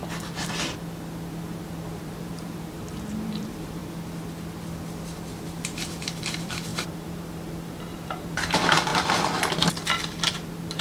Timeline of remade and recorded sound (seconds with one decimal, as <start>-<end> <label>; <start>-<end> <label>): 0.0-1.9 recorded; 1.9-3.8 remade; 3.8-6.2 recorded; 6.2-8.9 remade; 8.9-10.3 recorded; 10.3-10.8 remade